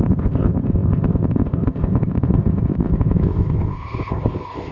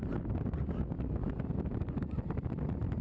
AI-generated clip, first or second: first